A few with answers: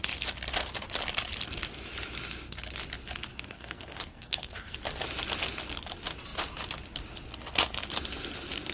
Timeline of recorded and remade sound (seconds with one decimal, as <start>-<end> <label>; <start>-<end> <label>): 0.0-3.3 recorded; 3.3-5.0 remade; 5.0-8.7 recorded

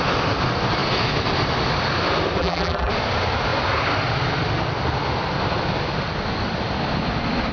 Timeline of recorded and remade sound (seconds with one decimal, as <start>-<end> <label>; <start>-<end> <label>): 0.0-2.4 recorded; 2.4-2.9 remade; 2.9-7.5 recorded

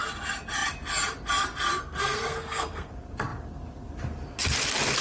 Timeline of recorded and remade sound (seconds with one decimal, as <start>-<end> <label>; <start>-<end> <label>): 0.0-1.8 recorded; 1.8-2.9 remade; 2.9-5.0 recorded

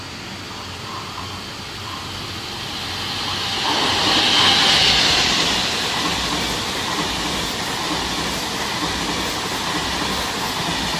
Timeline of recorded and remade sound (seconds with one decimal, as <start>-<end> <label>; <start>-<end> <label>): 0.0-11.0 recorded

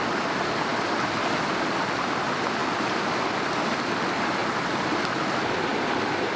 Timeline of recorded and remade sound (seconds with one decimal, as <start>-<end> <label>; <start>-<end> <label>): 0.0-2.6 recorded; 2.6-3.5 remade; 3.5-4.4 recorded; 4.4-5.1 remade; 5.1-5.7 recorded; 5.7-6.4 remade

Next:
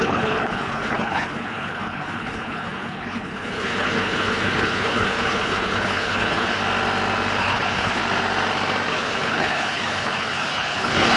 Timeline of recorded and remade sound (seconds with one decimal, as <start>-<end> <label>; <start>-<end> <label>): 0.0-6.6 remade; 6.6-7.4 recorded; 7.4-8.0 remade; 8.0-8.9 recorded; 8.9-11.2 remade

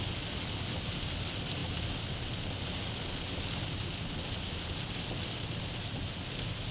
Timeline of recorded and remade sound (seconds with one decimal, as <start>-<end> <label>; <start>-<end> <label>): 0.0-6.7 recorded

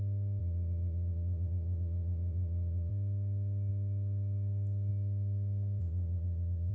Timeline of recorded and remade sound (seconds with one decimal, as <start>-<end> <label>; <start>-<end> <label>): 0.0-0.4 recorded; 0.4-2.9 remade; 2.9-5.8 recorded; 5.8-6.7 remade